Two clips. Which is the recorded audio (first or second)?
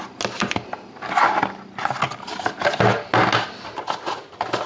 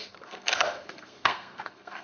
first